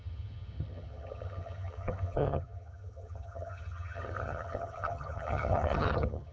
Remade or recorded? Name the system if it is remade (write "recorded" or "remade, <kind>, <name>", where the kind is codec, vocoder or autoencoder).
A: remade, vocoder, HiFi-GAN